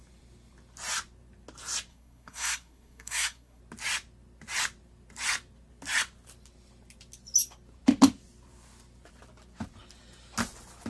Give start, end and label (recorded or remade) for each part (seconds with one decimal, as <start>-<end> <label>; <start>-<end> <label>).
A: 0.0-1.9 recorded; 1.9-3.6 remade; 3.6-10.9 recorded